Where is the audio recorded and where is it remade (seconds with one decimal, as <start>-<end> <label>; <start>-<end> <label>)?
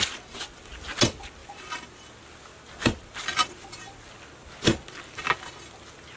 0.0-6.2 recorded